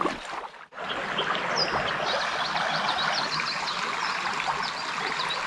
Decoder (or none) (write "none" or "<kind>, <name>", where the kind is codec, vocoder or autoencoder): none